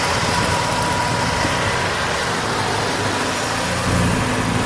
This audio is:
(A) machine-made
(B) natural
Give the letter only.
B